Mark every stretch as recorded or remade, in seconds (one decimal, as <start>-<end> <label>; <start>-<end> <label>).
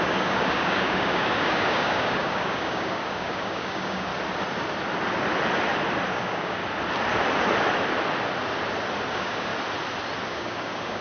0.0-4.1 remade; 4.1-6.1 recorded; 6.1-6.6 remade; 6.6-9.1 recorded; 9.1-9.5 remade; 9.5-10.3 recorded; 10.3-11.0 remade